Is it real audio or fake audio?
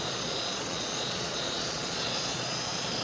fake